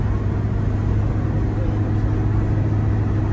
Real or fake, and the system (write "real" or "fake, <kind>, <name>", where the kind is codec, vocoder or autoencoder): real